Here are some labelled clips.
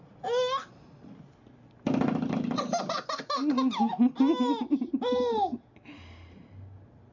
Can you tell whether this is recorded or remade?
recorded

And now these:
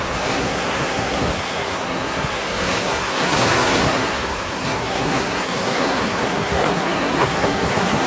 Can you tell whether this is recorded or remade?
remade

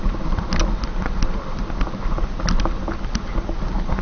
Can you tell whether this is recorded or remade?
recorded